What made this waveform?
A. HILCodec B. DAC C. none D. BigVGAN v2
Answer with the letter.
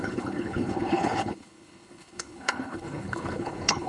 A